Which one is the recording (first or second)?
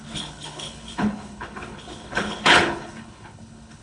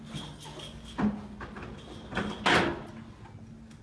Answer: second